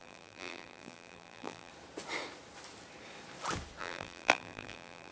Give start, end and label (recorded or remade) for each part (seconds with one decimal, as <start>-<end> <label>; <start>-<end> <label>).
0.0-1.7 remade; 1.7-3.8 recorded; 3.8-5.1 remade